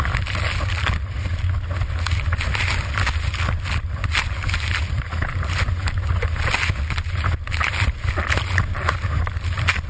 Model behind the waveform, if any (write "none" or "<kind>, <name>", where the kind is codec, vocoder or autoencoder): none